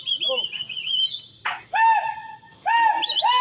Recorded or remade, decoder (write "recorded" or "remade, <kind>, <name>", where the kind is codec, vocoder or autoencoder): recorded